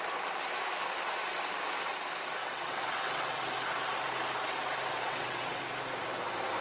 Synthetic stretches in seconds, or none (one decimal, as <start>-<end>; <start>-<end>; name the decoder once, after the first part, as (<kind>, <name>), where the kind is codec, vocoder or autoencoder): 2.4-3.4 (vocoder, WaveNeXt); 4.9-5.6